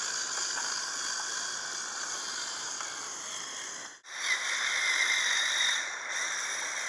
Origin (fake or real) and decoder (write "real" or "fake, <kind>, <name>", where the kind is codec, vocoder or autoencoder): real